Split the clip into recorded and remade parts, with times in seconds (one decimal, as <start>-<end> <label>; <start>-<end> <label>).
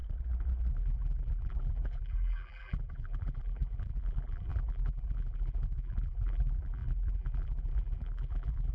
0.0-0.7 recorded; 0.7-8.7 remade